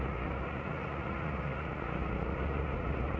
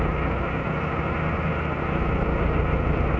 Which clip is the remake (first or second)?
first